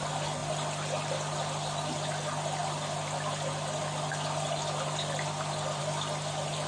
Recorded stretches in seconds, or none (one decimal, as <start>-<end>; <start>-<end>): 0.0-6.7